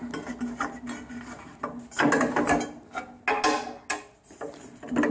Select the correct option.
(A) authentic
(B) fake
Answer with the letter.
A